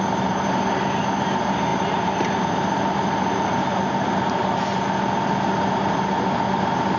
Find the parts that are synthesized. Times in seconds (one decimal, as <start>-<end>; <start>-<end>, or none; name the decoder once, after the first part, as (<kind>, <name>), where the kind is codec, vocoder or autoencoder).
none